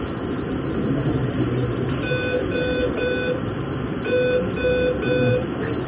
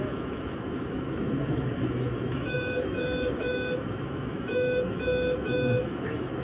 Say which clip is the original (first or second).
first